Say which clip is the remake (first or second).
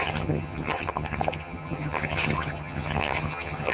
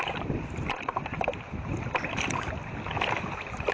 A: first